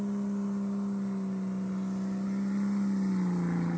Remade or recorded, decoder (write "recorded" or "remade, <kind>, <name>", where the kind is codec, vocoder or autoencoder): recorded